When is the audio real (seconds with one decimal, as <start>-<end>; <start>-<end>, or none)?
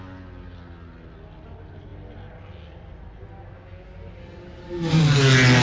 0.0-5.6